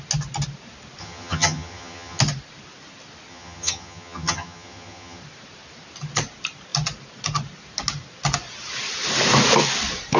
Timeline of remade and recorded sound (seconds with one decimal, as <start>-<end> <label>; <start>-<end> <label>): 0.0-1.0 recorded; 1.0-2.2 remade; 2.2-3.3 recorded; 3.3-5.2 remade; 5.2-10.2 recorded